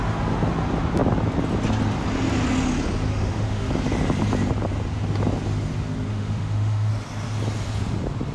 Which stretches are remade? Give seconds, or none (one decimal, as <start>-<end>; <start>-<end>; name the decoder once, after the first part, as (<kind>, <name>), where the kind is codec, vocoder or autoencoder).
3.1-3.7 (autoencoder, DAC-VAE); 6.1-6.9

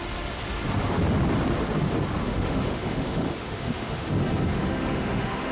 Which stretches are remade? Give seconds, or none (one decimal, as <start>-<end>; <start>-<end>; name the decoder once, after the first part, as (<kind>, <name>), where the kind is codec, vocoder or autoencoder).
2.2-4.1 (autoencoder, DAC-VAE); 4.5-5.5